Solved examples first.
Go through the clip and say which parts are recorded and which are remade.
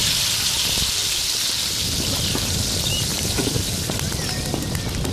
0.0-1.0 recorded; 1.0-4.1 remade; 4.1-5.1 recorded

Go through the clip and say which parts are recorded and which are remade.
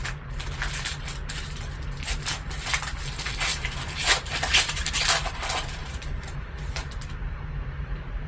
0.0-3.5 recorded; 3.5-4.9 remade; 4.9-5.8 recorded; 5.8-6.5 remade; 6.5-7.2 recorded; 7.2-8.3 remade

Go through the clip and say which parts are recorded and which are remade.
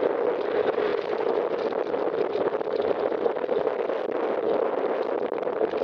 0.0-0.9 remade; 0.9-4.4 recorded; 4.4-5.8 remade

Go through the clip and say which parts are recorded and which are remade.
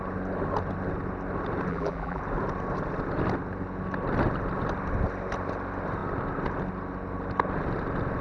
0.0-1.7 recorded; 1.7-2.2 remade; 2.2-8.2 recorded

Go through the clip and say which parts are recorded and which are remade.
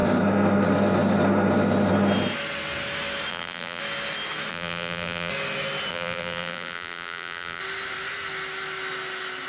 0.0-3.3 recorded; 3.3-3.8 remade; 3.8-4.5 recorded; 4.5-5.3 remade; 5.3-5.9 recorded; 5.9-7.6 remade; 7.6-9.5 recorded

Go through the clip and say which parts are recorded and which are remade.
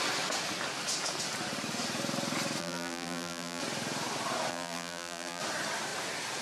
0.0-2.6 recorded; 2.6-3.6 remade; 3.6-4.5 recorded; 4.5-5.4 remade; 5.4-6.4 recorded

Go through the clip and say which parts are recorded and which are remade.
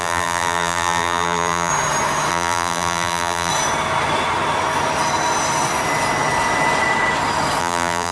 0.0-1.7 remade; 1.7-2.3 recorded; 2.3-3.5 remade; 3.5-7.6 recorded; 7.6-8.1 remade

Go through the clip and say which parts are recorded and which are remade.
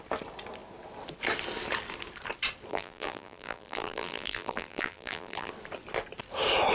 0.0-2.7 recorded; 2.7-5.5 remade; 5.5-6.7 recorded